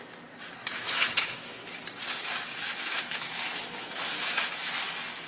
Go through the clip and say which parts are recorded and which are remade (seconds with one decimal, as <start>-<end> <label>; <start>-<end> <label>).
0.0-0.6 recorded; 0.6-1.8 remade; 1.8-2.7 recorded; 2.7-4.7 remade; 4.7-5.3 recorded